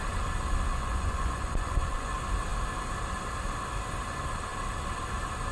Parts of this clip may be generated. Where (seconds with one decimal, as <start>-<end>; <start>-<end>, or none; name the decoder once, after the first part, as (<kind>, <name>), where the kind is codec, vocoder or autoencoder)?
0.7-2.1 (vocoder, Vocos)